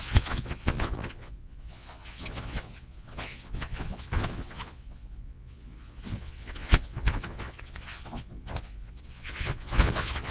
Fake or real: fake